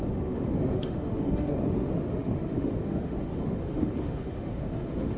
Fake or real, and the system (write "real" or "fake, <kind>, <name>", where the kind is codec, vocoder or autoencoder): fake, autoencoder, DAC-VAE